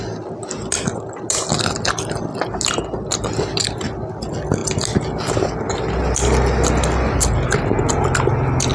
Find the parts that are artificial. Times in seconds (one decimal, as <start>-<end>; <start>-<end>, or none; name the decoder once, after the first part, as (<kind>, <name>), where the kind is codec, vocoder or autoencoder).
none